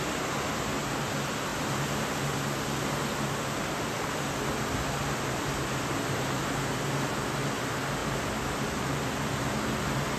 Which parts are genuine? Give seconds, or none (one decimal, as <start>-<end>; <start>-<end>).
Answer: 0.0-1.5; 2.2-5.0; 6.5-8.0; 9.0-10.2

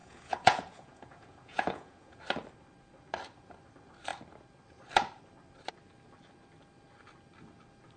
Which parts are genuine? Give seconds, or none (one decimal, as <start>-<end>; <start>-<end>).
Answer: 2.2-8.0

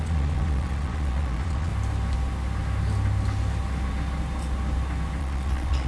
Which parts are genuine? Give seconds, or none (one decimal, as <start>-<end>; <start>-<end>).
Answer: 1.7-5.2

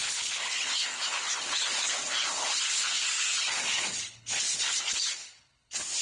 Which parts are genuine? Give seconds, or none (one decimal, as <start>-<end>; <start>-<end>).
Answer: none

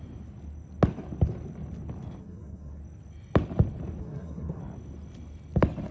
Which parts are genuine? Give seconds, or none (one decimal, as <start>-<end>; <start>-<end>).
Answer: 0.0-2.2; 2.8-4.0; 4.6-5.9

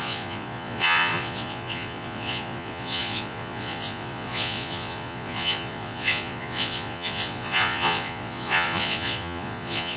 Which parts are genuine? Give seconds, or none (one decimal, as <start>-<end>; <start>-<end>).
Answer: none

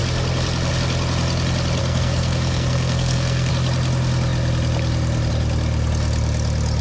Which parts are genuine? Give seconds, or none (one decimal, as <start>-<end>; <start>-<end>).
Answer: 0.0-1.8; 3.5-6.8

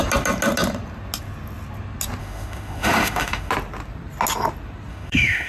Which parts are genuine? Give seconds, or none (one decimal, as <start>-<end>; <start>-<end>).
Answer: 0.0-2.2; 3.5-4.9